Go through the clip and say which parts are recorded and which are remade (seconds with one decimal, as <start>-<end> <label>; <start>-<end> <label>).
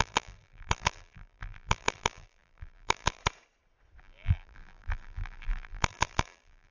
0.0-3.2 remade; 3.2-4.0 recorded; 4.0-6.7 remade